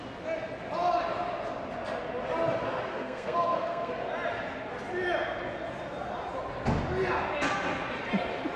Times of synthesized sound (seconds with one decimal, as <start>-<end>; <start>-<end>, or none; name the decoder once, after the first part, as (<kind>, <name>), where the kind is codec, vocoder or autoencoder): 2.9-3.9 (codec, SNAC)